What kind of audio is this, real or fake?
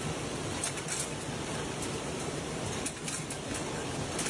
real